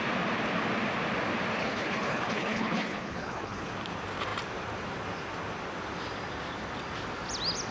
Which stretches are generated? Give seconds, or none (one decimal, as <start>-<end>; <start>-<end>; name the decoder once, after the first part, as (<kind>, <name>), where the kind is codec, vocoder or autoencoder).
1.6-3.7 (codec, HILCodec)